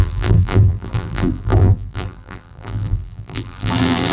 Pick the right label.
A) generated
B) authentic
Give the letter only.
A